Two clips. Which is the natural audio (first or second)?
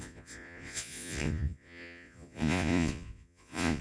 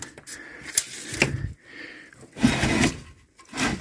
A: second